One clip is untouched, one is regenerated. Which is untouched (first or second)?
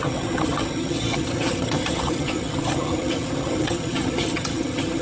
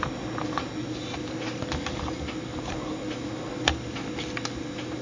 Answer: second